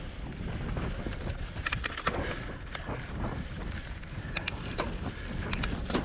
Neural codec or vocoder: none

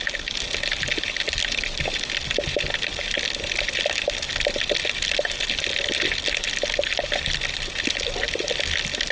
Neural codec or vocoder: none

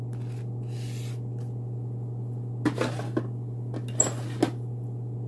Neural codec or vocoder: none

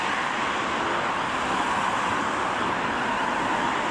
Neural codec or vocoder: none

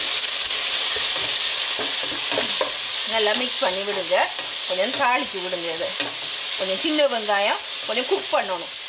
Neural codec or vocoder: none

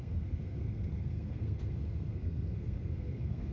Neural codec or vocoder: codec, SNAC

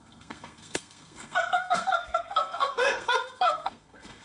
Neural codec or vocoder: codec, SNAC